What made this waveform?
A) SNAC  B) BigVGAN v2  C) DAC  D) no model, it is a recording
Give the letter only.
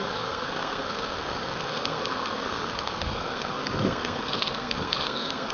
A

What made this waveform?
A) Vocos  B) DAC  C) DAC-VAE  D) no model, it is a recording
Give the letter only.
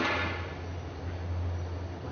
D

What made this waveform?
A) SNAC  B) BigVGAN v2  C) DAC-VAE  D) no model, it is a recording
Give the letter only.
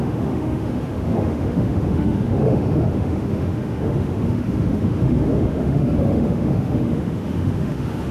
C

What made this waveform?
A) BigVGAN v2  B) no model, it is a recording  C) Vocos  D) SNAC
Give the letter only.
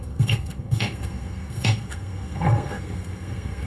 D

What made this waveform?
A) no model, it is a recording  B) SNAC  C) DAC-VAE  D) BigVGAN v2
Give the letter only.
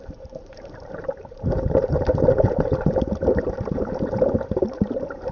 D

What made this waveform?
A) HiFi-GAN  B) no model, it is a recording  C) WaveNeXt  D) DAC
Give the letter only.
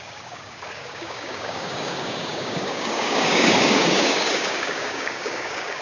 D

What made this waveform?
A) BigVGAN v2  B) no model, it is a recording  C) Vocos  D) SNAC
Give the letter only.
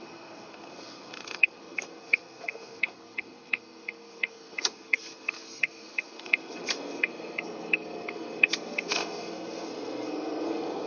D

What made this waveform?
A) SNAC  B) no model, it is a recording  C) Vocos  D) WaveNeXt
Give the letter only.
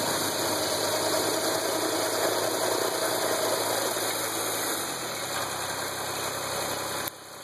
B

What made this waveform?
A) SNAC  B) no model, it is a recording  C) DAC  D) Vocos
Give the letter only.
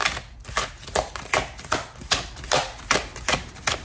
B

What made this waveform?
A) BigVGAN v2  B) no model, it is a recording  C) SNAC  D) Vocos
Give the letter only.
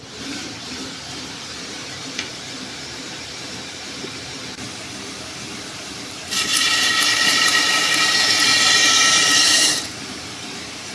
A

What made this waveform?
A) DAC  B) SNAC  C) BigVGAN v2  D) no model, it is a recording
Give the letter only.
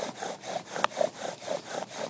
C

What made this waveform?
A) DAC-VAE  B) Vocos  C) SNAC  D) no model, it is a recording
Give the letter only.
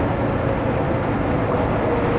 D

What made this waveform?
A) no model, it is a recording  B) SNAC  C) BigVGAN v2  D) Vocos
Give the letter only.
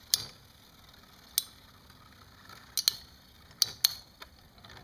A